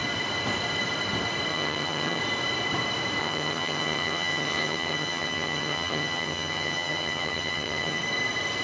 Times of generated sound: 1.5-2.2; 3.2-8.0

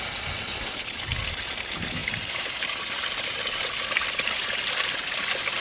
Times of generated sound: none